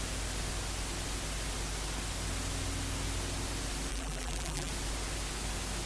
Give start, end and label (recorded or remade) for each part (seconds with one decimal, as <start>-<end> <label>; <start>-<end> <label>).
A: 0.0-3.9 recorded; 3.9-4.7 remade; 4.7-5.9 recorded